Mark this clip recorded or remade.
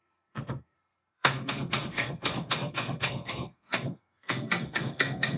remade